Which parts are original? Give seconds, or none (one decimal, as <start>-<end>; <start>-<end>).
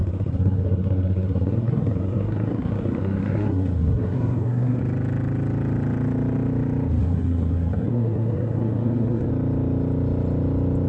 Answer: 4.8-7.0; 9.3-10.9